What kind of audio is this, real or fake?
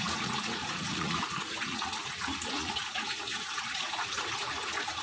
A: fake